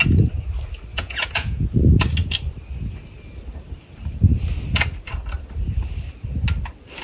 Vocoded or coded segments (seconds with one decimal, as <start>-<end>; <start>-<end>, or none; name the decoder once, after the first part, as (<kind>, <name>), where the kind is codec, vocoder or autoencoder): 0.9-1.8 (vocoder, Vocos)